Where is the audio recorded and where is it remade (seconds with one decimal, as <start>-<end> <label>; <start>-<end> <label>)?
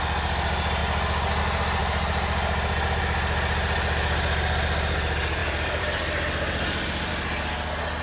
0.0-0.8 recorded; 0.8-1.4 remade; 1.4-1.8 recorded; 1.8-3.0 remade; 3.0-5.4 recorded; 5.4-7.1 remade; 7.1-8.0 recorded